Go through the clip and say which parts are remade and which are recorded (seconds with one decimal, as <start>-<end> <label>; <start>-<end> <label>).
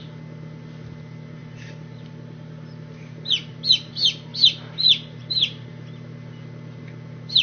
0.0-7.4 recorded